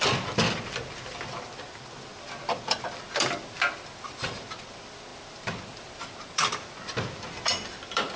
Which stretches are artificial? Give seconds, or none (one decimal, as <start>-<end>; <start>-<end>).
0.0-8.2